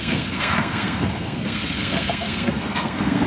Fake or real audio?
fake